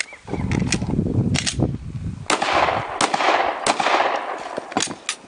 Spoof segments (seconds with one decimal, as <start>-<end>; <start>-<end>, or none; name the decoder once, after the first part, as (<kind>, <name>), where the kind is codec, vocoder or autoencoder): none